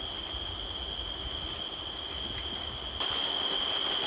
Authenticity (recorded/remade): recorded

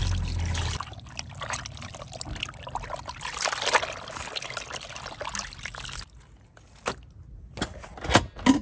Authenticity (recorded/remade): recorded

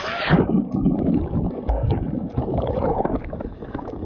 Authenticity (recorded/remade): remade